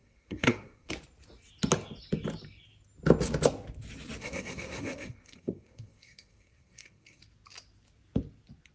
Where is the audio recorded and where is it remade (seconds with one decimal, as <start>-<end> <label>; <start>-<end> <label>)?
0.0-0.9 remade; 0.9-4.2 recorded; 4.2-7.2 remade; 7.2-8.7 recorded